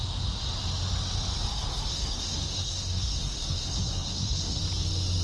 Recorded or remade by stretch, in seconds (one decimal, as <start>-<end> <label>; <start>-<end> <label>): 0.0-1.5 recorded; 1.5-4.6 remade; 4.6-5.2 recorded

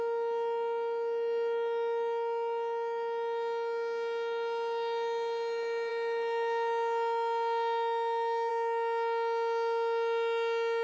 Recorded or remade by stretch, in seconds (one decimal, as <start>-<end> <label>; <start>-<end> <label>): 0.0-10.8 recorded

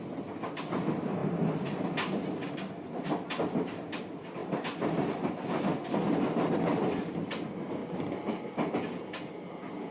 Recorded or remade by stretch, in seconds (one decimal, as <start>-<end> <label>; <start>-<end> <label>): 0.0-1.2 recorded; 1.2-1.8 remade; 1.8-7.8 recorded; 7.8-9.0 remade; 9.0-9.9 recorded